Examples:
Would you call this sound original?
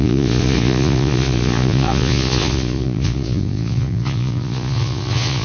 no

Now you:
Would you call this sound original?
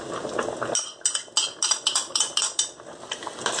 yes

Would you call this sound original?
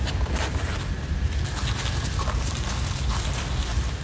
yes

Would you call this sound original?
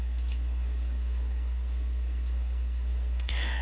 no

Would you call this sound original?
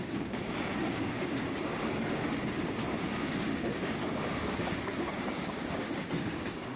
no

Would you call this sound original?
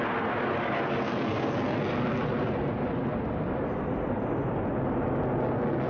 yes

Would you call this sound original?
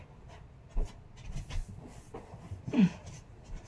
yes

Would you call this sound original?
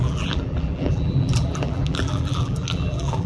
no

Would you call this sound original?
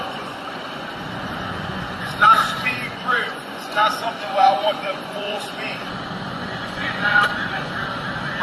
no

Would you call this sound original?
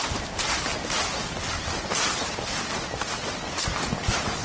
yes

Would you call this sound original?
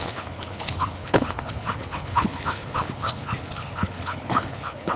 no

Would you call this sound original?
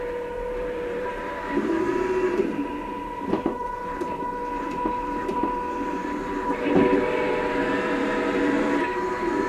no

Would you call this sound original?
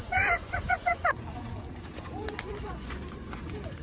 no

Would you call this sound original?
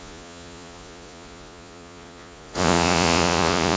no